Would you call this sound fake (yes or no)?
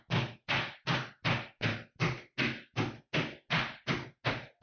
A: no